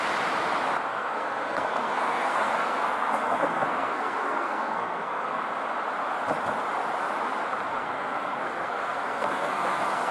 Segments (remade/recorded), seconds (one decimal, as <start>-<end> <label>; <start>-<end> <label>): 0.0-0.9 recorded; 0.9-5.4 remade; 5.4-7.7 recorded; 7.7-10.1 remade